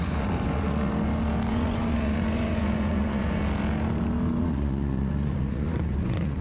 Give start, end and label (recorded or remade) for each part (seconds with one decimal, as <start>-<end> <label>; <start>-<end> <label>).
0.0-0.9 remade; 0.9-1.5 recorded; 1.5-3.4 remade; 3.4-4.4 recorded; 4.4-6.4 remade